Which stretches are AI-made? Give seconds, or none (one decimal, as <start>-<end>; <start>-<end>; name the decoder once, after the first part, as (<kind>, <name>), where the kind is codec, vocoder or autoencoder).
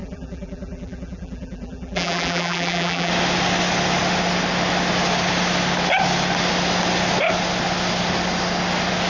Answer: 0.0-3.1 (vocoder, BigVGAN v2)